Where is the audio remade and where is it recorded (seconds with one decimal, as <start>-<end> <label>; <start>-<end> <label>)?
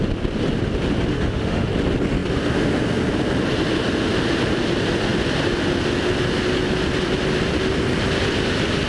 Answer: 0.0-1.1 recorded; 1.1-1.7 remade; 1.7-8.9 recorded